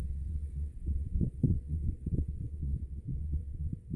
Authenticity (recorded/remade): remade